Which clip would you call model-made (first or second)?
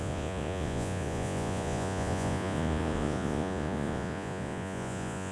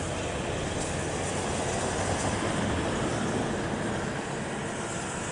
first